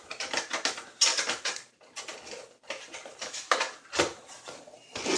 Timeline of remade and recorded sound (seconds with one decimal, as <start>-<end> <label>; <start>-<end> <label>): 0.0-5.2 recorded